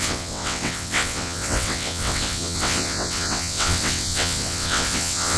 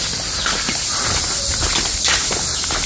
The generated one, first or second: first